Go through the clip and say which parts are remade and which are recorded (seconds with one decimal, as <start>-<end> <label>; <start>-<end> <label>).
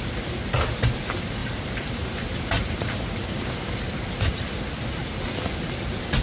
0.0-1.4 recorded; 1.4-3.3 remade; 3.3-6.2 recorded